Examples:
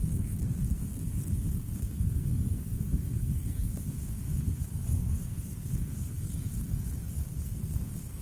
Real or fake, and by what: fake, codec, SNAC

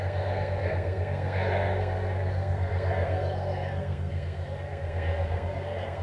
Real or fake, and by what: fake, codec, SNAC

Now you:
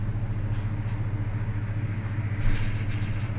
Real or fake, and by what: real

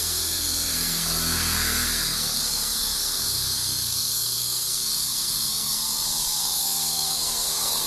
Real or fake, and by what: fake, codec, SNAC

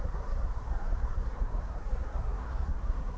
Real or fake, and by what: fake, codec, SNAC